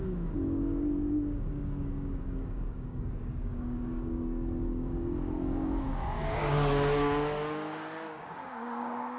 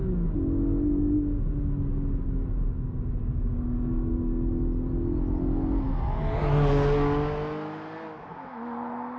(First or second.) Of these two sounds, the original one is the second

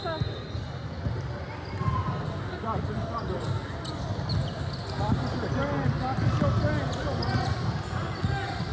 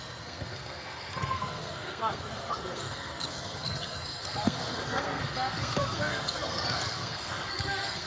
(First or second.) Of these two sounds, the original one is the first